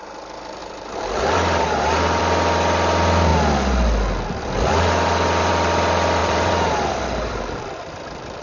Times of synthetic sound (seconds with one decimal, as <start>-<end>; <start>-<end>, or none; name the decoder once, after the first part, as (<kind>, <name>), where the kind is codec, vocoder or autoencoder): 0.6-2.2 (vocoder, BigVGAN v2); 6.2-8.4